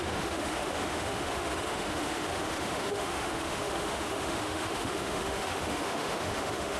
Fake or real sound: fake